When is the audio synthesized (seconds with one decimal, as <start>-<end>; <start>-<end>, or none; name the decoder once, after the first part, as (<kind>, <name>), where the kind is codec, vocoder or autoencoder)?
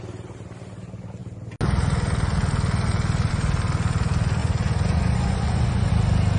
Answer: 4.4-5.9 (vocoder, Vocos)